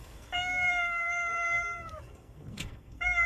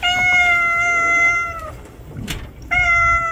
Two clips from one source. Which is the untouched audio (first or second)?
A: second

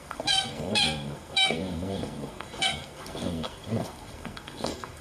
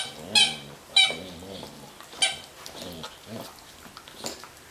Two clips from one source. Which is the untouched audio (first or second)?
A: second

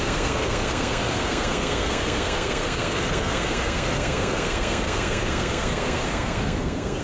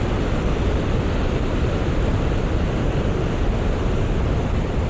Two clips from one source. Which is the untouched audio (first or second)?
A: second